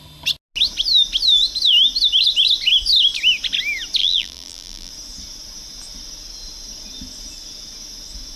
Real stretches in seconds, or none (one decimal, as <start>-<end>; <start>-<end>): 0.0-4.0; 4.9-8.4